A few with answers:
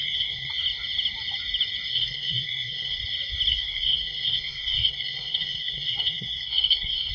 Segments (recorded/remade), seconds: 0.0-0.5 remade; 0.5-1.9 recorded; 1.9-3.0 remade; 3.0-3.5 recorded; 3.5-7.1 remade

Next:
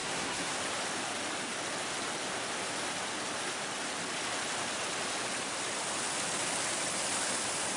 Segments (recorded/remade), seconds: 0.0-0.6 remade; 0.6-7.8 recorded